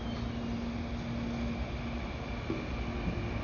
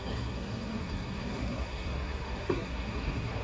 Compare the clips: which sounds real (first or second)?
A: first